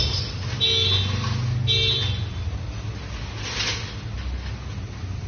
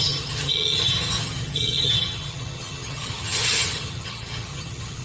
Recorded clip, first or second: first